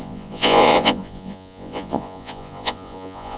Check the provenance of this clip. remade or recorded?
remade